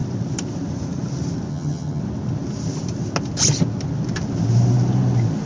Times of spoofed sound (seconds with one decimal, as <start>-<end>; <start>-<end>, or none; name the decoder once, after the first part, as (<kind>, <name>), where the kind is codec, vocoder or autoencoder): 1.5-2.0 (vocoder, HiFi-GAN)